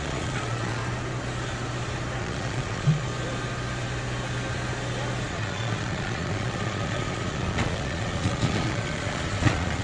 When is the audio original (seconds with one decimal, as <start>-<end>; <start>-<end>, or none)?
0.8-2.2; 3.1-5.3

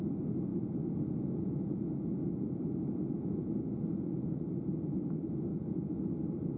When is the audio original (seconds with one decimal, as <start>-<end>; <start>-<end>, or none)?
0.0-0.5; 4.4-5.5; 6.1-6.6

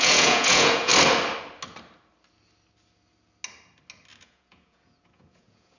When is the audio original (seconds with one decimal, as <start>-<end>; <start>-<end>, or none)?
0.9-4.2